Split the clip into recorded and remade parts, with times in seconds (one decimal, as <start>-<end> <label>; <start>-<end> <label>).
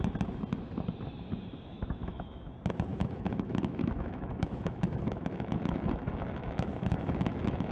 0.0-1.7 recorded; 1.7-2.5 remade; 2.5-2.9 recorded; 2.9-7.7 remade